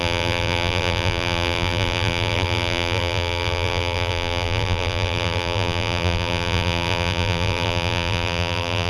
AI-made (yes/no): yes